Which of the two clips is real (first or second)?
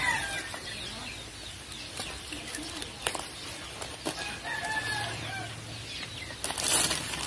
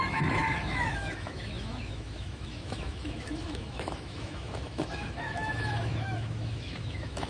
first